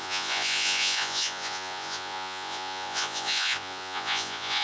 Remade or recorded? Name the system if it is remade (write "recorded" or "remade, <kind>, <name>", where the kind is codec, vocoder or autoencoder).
remade, vocoder, Vocos